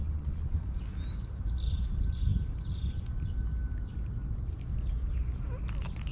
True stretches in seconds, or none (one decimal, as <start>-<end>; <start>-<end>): 0.6-6.1